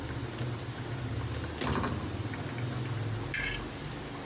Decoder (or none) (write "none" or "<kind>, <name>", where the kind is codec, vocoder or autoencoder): none